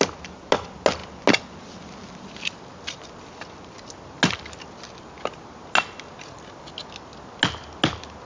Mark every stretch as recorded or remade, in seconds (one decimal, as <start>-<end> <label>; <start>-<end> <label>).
0.0-8.2 recorded

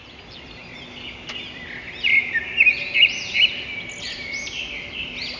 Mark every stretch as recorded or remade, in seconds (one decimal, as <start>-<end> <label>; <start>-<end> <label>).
0.0-5.4 recorded